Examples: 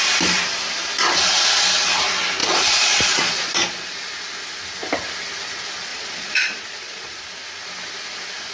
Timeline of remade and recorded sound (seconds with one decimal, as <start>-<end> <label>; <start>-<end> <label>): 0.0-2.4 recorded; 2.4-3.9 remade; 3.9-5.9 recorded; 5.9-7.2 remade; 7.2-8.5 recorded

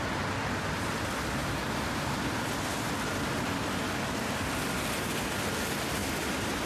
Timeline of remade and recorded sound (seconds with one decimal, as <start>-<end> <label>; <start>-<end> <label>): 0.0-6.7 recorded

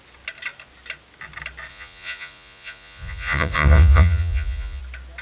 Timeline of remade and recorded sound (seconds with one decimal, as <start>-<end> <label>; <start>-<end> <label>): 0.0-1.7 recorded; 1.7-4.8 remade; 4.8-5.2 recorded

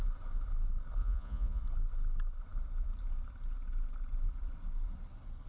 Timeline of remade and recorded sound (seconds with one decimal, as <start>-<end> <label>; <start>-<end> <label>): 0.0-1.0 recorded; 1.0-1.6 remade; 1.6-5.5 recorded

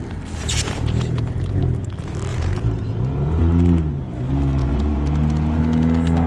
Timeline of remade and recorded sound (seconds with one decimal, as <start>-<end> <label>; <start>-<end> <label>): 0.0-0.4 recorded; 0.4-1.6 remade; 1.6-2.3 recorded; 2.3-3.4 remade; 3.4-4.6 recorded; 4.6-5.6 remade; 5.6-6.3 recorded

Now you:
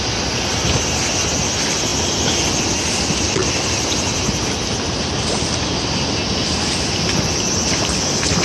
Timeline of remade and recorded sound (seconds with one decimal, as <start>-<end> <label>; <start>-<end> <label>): 0.0-8.4 recorded

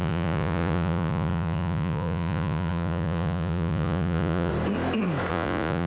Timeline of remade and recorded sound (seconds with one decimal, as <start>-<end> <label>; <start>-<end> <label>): 0.0-4.5 remade; 4.5-5.3 recorded; 5.3-5.9 remade

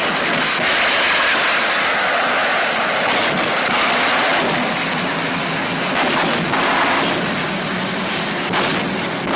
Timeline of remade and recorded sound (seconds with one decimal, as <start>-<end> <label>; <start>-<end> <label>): 0.0-9.4 recorded